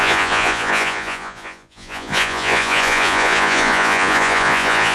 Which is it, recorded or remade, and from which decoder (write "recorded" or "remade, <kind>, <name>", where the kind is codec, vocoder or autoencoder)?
remade, vocoder, Vocos